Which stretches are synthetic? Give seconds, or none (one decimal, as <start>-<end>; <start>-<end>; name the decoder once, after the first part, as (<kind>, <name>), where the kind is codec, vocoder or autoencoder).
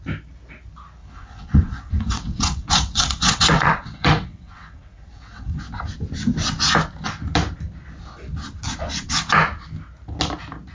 1.0-5.6 (vocoder, WaveNeXt)